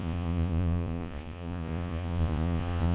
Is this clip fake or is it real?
fake